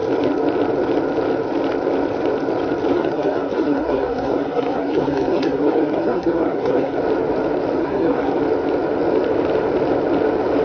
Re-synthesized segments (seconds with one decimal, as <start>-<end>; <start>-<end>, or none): 2.9-7.0; 7.8-8.4